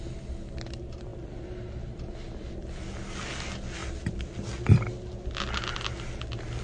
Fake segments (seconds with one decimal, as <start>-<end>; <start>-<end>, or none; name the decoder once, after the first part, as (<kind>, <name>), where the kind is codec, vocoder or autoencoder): none